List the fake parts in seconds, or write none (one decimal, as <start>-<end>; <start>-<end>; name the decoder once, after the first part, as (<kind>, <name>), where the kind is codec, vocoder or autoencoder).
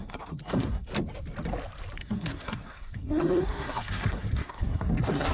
0.0-0.9 (codec, SNAC); 2.0-5.3